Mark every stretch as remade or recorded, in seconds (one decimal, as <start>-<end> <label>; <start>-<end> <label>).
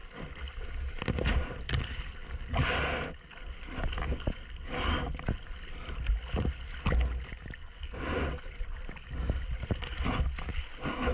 0.0-11.1 recorded